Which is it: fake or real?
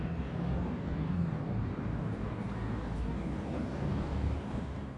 fake